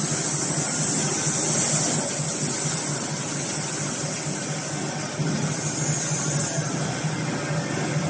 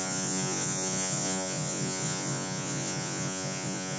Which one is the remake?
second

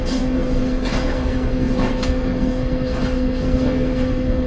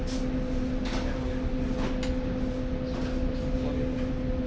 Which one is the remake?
first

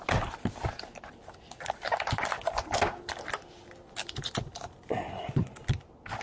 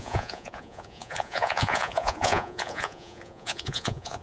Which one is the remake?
second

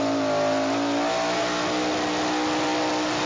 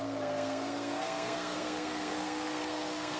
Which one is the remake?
second